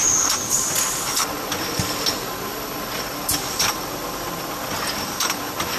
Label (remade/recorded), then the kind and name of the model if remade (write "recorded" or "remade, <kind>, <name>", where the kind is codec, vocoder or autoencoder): recorded